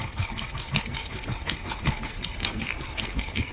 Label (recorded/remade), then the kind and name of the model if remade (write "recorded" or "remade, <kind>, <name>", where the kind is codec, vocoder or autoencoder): remade, codec, SNAC